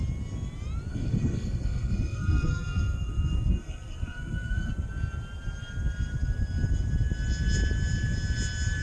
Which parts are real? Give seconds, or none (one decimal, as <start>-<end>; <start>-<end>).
0.0-0.9; 4.7-8.8